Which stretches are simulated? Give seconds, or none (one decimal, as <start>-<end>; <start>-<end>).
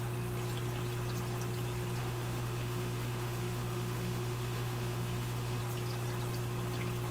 2.0-5.6